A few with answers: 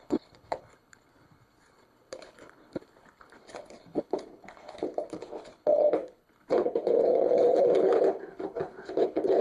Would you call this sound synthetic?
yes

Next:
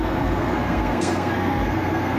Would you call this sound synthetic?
yes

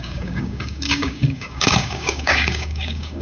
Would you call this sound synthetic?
yes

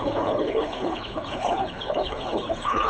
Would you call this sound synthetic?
yes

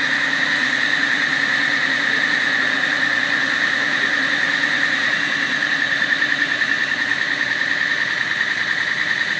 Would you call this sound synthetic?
yes